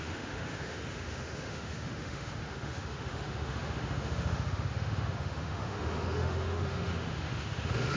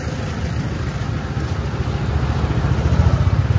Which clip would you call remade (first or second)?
first